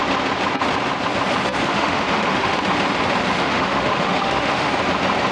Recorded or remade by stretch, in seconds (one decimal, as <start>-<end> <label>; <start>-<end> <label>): 0.0-1.6 recorded; 1.6-2.6 remade; 2.6-3.4 recorded; 3.4-4.7 remade; 4.7-5.3 recorded